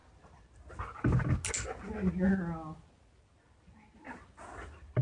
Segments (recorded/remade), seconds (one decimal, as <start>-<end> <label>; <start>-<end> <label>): 0.0-5.0 recorded